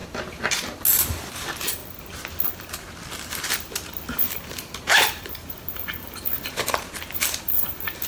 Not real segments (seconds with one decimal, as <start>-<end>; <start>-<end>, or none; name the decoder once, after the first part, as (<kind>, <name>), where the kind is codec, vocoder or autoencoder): 1.3-1.8 (vocoder, BigVGAN v2); 5.2-8.1